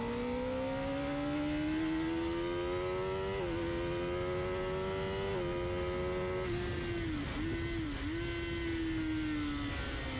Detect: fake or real real